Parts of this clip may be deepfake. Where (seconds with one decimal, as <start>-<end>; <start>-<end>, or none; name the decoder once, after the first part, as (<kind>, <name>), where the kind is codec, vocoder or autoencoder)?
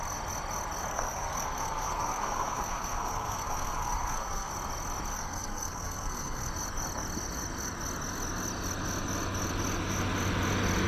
0.9-4.5 (codec, SNAC); 5.1-6.5